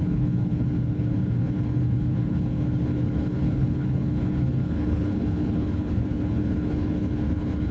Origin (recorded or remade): remade